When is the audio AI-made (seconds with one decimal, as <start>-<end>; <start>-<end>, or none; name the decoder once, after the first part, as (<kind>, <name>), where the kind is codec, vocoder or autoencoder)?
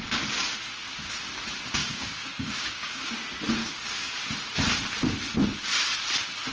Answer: 1.8-3.0 (codec, DAC); 3.6-4.1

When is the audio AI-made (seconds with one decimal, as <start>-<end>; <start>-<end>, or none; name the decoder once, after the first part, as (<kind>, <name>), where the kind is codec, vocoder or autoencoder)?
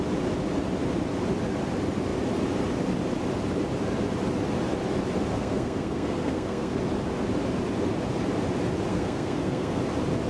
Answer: 5.3-6.8 (codec, SNAC); 8.9-9.8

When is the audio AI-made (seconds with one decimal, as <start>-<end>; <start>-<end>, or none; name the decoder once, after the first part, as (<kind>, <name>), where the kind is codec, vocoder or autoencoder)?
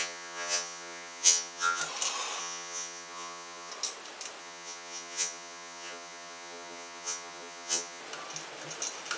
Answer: 0.0-1.8 (vocoder, HiFi-GAN); 2.4-3.7; 4.4-8.0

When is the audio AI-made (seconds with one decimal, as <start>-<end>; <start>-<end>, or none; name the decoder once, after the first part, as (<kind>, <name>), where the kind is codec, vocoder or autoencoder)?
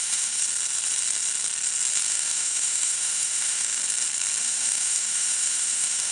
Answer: 0.0-0.4 (autoencoder, DAC-VAE); 2.1-3.8; 4.4-6.1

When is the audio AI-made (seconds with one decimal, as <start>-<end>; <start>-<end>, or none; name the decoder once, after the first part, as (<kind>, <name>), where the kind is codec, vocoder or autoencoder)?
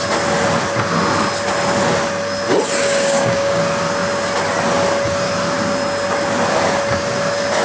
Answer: 2.8-3.6 (codec, DAC)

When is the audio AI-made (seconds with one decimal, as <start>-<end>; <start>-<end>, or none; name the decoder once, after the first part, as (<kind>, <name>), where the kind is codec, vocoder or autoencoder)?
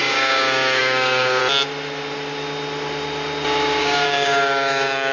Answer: 0.0-1.4 (codec, DAC); 3.8-5.1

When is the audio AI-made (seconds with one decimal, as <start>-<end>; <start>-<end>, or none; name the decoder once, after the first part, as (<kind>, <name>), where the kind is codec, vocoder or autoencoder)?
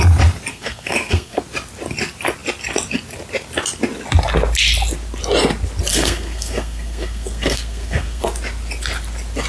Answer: 0.5-1.4 (codec, SNAC); 5.9-8.2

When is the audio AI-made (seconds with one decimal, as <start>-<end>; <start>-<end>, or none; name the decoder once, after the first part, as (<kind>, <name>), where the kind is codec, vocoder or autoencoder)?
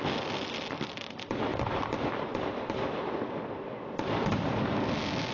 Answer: none